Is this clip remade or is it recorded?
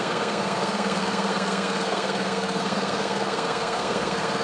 remade